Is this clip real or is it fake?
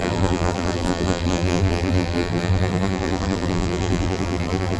fake